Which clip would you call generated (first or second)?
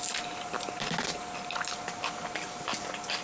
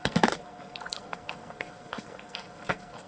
second